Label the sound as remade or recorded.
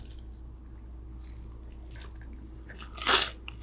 recorded